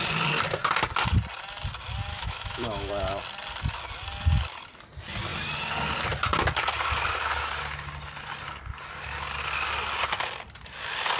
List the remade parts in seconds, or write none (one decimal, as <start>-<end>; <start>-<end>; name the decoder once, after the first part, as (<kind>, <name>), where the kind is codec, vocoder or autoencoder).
2.1-2.9 (autoencoder, DAC-VAE)